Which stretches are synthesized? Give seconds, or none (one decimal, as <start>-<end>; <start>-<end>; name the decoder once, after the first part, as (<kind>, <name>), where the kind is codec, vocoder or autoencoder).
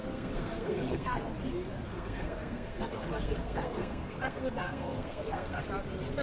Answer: 0.0-1.3 (codec, SNAC); 1.9-5.6